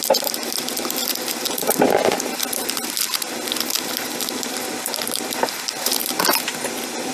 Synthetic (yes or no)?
no